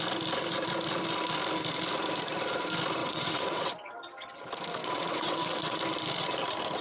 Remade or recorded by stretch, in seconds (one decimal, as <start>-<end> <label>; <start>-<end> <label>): 0.0-3.0 recorded; 3.0-3.7 remade; 3.7-4.8 recorded; 4.8-5.8 remade; 5.8-6.8 recorded